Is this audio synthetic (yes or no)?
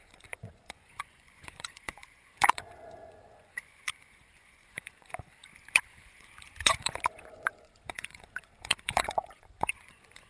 yes